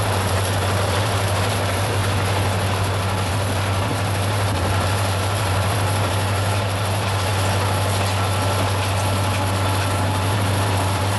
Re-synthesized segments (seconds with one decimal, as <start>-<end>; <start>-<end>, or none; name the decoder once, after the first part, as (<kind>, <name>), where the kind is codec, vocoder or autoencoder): 0.0-2.0 (vocoder, BigVGAN v2); 3.3-7.3; 10.0-11.2